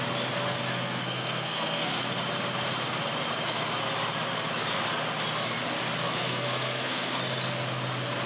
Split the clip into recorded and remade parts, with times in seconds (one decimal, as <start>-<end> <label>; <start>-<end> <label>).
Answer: 0.0-0.7 recorded; 0.7-2.0 remade; 2.0-6.0 recorded; 6.0-7.2 remade; 7.2-8.3 recorded